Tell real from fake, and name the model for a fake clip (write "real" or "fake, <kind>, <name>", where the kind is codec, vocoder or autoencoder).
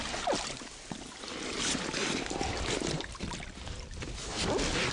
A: real